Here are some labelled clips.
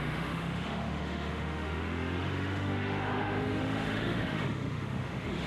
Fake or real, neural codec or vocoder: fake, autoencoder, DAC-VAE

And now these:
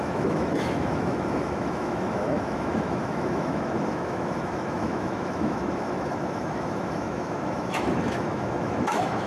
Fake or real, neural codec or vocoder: fake, autoencoder, DAC-VAE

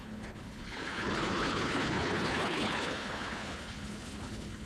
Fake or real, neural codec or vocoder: fake, codec, HILCodec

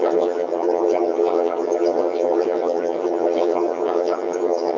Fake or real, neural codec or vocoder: fake, vocoder, HiFi-GAN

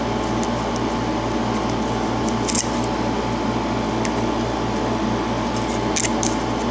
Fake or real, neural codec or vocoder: real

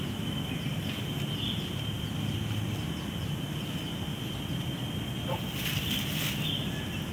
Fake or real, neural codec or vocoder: real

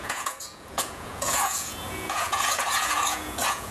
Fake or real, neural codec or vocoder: fake, vocoder, Vocos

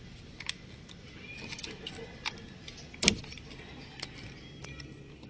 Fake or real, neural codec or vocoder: real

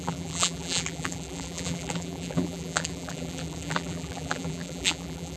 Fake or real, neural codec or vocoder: fake, vocoder, BigVGAN v2